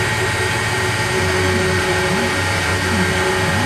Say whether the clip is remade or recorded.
remade